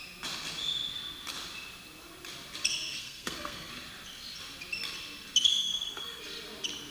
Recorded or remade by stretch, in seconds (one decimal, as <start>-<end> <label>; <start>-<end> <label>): 0.0-3.0 recorded; 3.0-3.7 remade; 3.7-5.5 recorded; 5.5-6.2 remade; 6.2-6.9 recorded